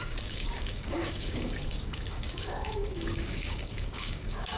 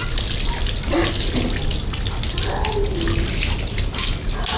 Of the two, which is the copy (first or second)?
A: first